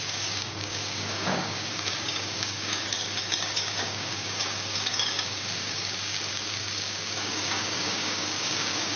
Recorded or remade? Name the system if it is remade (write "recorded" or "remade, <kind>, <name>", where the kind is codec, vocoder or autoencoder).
remade, codec, DAC